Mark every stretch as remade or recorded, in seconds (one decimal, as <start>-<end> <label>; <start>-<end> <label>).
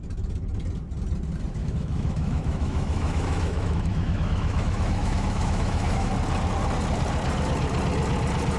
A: 0.0-1.6 recorded; 1.6-6.1 remade; 6.1-8.6 recorded